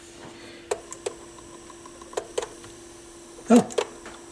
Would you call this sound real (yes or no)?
yes